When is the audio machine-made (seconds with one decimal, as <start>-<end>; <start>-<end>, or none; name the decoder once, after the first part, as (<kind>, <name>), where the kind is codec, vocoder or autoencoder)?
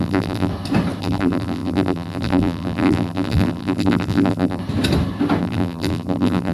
0.0-0.5 (vocoder, BigVGAN v2); 1.0-4.6; 5.4-6.5